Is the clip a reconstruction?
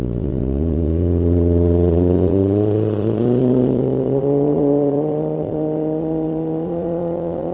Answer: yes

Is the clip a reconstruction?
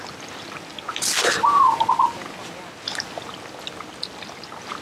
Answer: no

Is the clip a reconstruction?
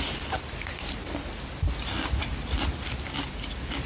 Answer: yes